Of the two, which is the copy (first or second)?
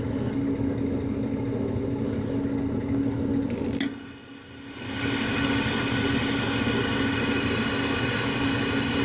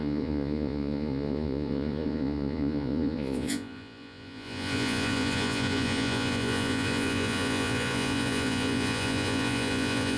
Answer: second